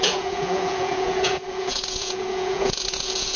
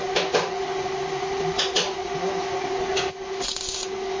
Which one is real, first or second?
second